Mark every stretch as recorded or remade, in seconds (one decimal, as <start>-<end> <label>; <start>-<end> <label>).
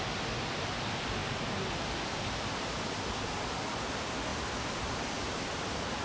0.0-6.0 recorded